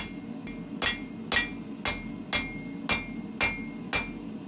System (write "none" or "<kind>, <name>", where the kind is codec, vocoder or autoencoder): none